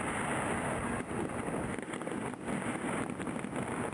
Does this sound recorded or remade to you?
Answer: recorded